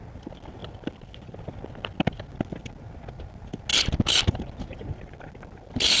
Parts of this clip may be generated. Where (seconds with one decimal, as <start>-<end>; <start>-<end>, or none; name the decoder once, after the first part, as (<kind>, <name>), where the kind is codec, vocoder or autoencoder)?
none